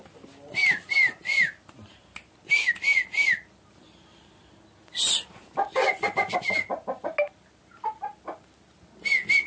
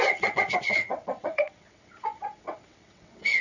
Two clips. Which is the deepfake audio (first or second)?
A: second